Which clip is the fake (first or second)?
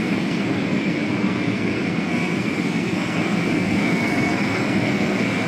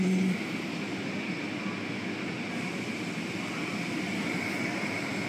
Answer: first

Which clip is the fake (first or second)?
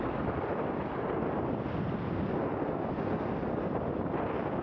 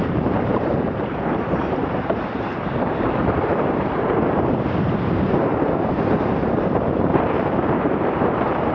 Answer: second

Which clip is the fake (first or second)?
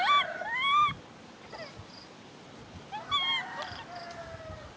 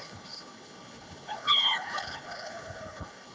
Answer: second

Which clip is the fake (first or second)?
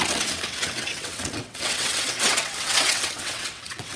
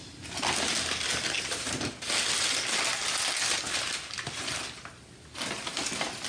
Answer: first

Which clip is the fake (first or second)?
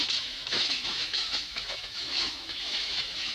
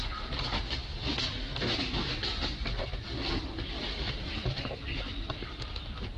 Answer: first